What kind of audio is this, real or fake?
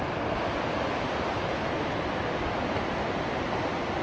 real